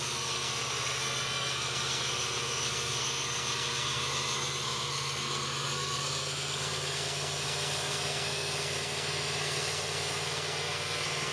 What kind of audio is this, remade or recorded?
remade